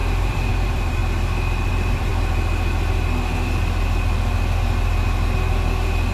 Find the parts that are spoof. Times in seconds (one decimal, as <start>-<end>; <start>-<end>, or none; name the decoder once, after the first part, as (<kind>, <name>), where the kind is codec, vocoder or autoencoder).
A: 0.0-1.0 (vocoder, BigVGAN v2); 1.7-2.1